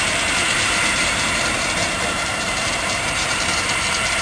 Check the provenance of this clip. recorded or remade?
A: remade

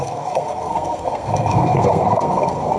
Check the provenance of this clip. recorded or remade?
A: remade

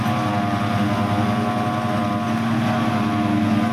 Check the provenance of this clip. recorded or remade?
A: recorded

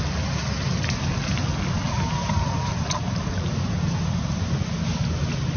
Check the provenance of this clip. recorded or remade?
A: recorded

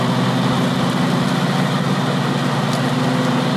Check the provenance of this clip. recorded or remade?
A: recorded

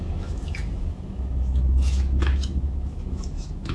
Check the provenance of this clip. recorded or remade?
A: remade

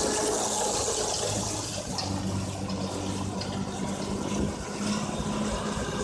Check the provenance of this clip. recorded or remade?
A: recorded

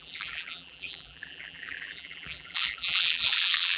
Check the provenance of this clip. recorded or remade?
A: remade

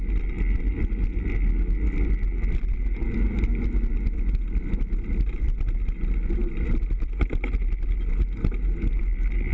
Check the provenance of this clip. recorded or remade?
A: recorded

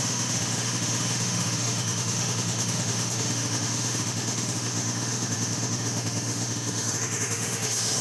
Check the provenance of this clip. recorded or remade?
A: remade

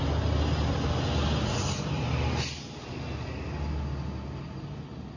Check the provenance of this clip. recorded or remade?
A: recorded